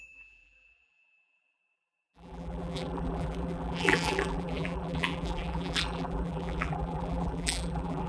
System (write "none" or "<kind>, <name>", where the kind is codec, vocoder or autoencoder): vocoder, BigVGAN v2